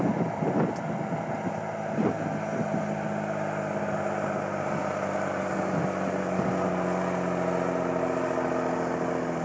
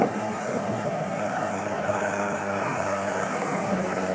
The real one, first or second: first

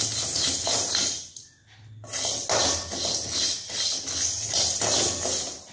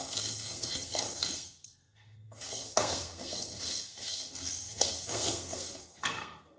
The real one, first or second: first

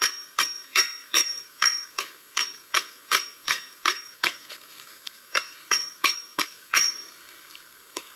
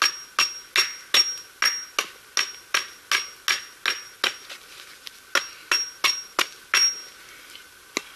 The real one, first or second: second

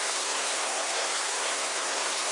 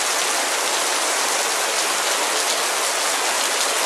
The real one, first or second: second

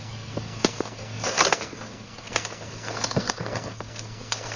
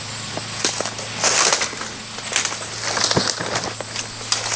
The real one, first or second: second